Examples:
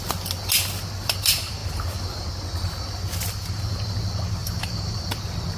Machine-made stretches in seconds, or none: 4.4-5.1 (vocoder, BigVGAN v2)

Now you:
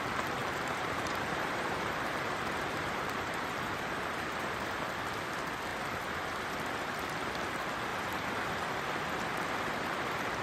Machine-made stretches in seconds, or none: 0.4-4.9 (vocoder, BigVGAN v2)